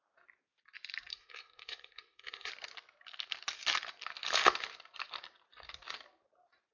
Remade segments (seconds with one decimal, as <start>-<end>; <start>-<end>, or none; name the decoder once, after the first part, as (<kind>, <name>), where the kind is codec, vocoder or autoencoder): 1.1-2.5 (codec, SNAC)